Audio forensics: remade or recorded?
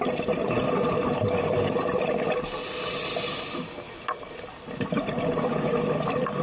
recorded